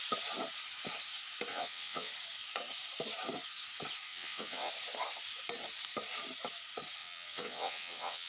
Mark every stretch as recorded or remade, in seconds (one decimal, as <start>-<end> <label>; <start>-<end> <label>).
0.0-1.5 recorded; 1.5-2.1 remade; 2.1-4.1 recorded; 4.1-4.7 remade; 4.7-7.0 recorded; 7.0-8.3 remade